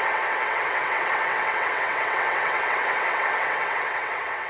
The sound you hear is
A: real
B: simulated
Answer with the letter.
B